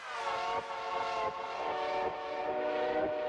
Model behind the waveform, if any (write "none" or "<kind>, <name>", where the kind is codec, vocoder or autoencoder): none